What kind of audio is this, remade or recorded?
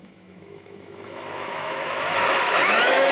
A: remade